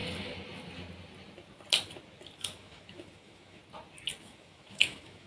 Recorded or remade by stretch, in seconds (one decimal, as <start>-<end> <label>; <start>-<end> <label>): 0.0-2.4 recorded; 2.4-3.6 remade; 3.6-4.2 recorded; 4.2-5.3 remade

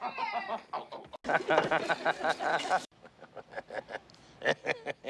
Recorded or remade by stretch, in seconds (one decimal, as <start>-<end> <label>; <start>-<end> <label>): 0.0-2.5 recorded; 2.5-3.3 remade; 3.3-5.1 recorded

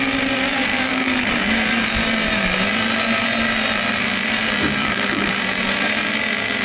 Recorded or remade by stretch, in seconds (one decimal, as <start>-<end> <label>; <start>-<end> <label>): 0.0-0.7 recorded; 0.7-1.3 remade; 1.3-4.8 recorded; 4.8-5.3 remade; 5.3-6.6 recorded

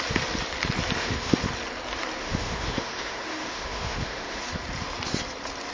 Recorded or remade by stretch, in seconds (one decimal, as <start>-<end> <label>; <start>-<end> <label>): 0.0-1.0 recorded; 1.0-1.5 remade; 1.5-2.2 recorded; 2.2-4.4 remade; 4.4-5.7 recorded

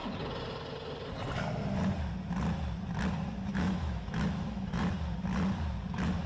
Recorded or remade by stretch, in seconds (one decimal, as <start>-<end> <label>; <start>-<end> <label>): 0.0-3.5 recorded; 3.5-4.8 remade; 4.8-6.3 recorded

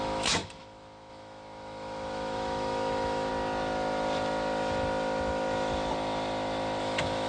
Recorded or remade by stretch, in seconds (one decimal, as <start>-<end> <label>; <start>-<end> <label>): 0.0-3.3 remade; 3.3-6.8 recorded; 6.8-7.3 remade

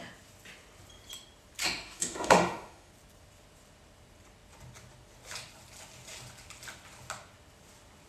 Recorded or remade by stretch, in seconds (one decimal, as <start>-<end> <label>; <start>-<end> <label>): 0.0-1.6 recorded; 1.6-2.9 remade; 2.9-8.1 recorded